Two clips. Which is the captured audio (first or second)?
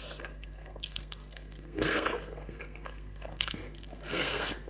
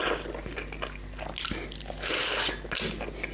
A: second